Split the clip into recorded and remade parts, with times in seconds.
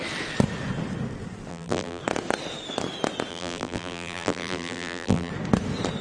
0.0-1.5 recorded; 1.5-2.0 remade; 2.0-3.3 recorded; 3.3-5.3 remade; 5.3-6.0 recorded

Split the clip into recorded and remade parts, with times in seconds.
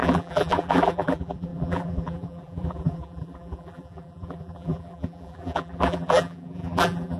0.0-7.2 remade